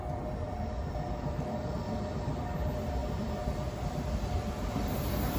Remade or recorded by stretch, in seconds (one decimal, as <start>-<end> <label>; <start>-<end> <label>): 0.0-5.4 recorded